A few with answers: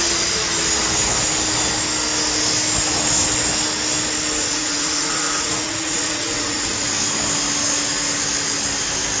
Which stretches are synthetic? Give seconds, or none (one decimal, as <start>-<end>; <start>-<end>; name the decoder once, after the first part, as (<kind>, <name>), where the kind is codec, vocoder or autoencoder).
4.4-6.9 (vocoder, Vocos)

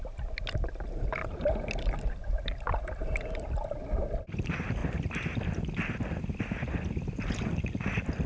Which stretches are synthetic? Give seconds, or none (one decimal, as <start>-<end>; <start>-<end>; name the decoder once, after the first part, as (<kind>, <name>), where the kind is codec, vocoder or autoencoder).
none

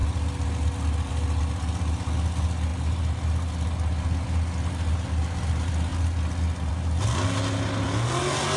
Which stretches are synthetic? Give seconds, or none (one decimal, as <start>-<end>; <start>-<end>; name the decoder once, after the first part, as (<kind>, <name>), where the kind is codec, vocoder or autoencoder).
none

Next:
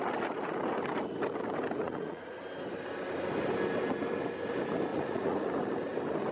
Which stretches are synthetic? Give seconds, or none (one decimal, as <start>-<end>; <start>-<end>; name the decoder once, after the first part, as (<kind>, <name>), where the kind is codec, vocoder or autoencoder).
1.8-2.4 (vocoder, Vocos); 4.9-5.5